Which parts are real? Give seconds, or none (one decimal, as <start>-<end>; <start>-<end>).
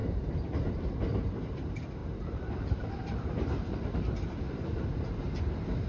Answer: 0.7-2.0; 5.5-5.9